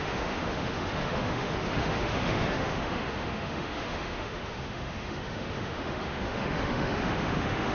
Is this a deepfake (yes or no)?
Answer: yes